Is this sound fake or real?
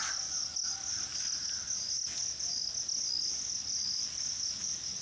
real